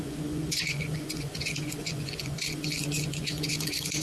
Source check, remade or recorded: remade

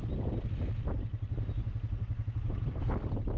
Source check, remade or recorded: recorded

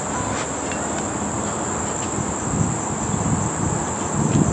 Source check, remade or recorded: recorded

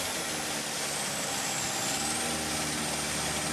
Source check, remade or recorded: recorded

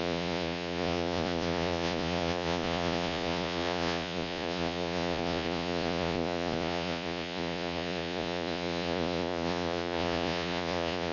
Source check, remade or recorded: remade